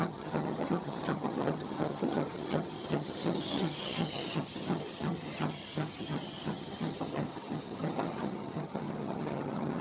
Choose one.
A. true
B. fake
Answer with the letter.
B